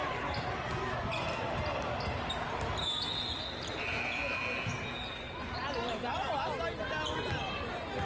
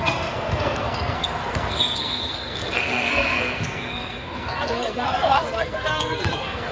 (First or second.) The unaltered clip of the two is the first